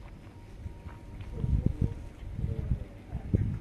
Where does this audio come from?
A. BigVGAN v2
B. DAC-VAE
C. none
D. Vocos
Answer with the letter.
C